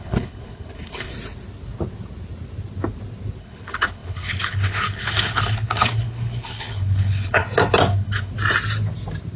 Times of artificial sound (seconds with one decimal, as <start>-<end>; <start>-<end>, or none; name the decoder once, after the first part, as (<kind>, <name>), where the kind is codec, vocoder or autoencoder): 0.0-1.1 (codec, HILCodec); 3.4-7.4; 7.9-8.3